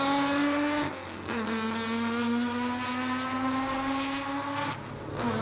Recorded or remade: recorded